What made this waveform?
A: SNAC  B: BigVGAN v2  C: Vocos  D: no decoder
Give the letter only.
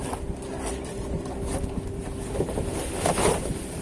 D